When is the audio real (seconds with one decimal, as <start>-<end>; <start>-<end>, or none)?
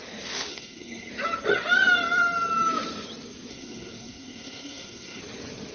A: 0.0-0.5; 1.1-3.5; 5.2-5.7